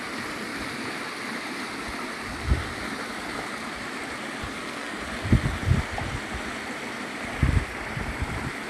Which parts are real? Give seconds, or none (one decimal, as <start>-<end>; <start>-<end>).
0.0-4.4; 5.0-8.7